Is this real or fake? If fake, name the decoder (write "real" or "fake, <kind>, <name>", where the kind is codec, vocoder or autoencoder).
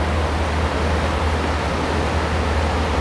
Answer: real